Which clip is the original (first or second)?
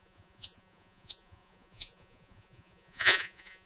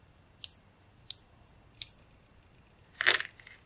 second